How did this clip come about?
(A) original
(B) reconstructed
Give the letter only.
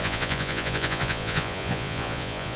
B